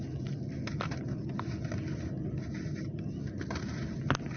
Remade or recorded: recorded